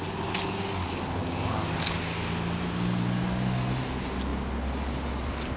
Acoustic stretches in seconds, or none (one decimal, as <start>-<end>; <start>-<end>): 0.0-5.6